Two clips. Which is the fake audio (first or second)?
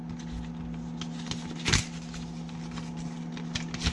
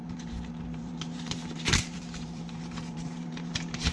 second